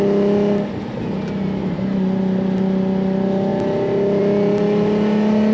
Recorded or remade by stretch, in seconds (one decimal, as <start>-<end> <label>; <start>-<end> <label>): 0.0-5.5 recorded